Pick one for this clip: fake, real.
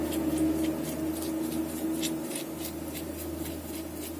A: real